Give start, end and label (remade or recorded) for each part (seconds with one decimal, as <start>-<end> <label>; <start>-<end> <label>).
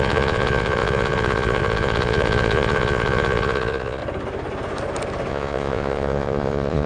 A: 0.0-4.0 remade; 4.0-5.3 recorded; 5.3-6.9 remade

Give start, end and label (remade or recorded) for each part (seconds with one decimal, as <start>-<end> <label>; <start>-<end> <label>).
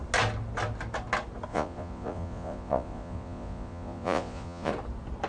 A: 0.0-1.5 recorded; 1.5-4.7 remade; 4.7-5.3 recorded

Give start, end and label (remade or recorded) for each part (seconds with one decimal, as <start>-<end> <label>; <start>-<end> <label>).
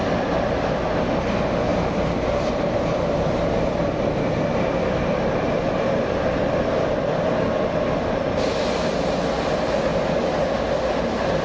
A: 0.0-11.4 recorded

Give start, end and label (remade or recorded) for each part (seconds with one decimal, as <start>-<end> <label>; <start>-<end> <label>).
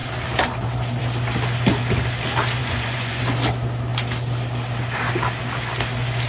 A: 0.0-2.6 recorded; 2.6-3.2 remade; 3.2-6.3 recorded